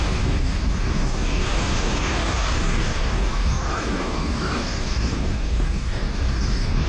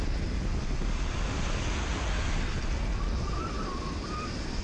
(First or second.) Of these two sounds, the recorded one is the second